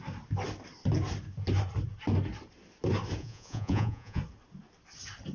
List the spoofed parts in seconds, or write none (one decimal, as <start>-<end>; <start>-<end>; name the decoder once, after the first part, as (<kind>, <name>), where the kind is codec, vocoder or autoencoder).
3.2-4.2 (vocoder, Vocos)